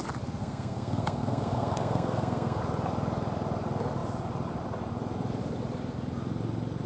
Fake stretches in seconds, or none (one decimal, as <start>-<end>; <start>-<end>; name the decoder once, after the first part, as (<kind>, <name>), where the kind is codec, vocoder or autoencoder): 0.4-2.6 (codec, SNAC)